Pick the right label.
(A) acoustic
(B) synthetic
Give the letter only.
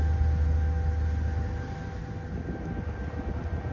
A